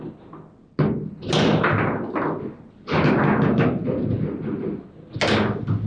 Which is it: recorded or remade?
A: recorded